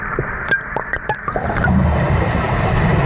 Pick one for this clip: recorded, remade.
remade